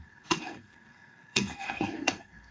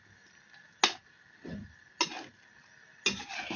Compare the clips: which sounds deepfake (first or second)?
first